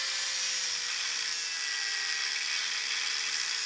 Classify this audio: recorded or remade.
recorded